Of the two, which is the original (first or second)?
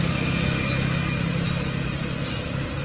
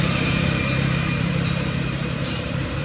first